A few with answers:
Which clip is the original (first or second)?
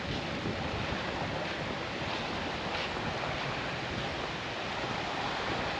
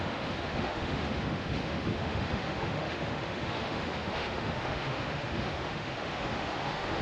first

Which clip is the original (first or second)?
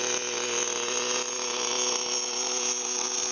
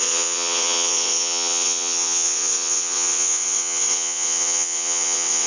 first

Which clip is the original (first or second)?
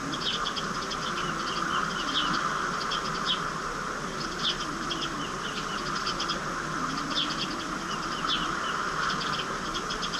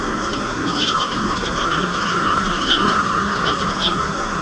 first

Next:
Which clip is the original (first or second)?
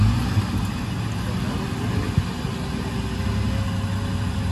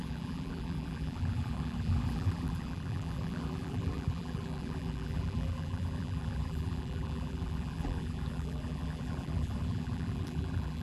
first